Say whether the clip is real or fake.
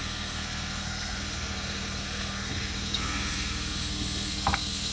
fake